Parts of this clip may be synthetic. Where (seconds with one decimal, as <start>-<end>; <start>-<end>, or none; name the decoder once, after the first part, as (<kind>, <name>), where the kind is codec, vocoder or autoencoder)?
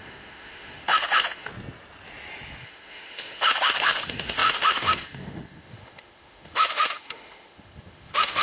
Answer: 0.0-1.5 (autoencoder, DAC-VAE); 2.6-8.4